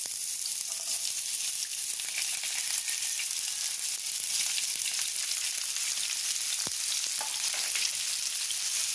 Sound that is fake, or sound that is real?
real